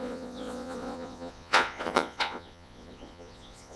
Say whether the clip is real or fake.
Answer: fake